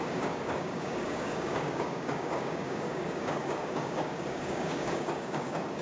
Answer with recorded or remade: remade